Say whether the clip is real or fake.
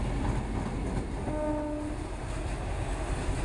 real